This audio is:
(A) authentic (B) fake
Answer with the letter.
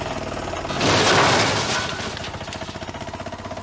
A